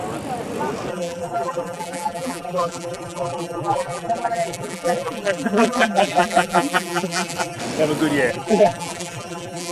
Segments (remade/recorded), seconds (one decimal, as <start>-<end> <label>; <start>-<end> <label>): 0.0-0.9 recorded; 0.9-7.6 remade; 7.6-8.3 recorded; 8.3-9.7 remade